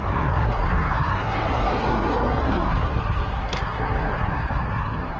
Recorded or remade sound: remade